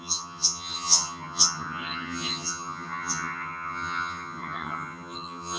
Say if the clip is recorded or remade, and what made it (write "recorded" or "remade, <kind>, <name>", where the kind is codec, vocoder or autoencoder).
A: remade, vocoder, HiFi-GAN